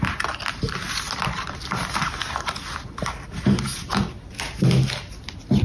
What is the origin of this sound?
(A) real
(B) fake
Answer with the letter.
A